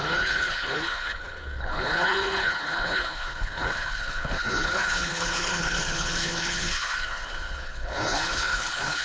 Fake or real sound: fake